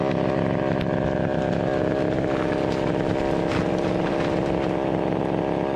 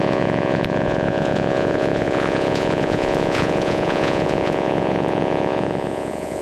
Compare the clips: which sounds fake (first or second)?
second